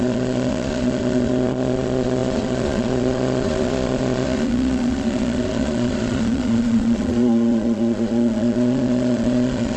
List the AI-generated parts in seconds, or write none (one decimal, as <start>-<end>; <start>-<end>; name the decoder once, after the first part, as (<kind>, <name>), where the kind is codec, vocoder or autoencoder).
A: 0.0-9.8 (vocoder, Vocos)